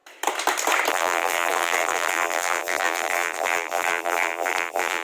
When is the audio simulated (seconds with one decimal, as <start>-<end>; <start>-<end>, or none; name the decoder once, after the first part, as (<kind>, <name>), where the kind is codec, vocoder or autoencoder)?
0.9-5.0 (vocoder, BigVGAN v2)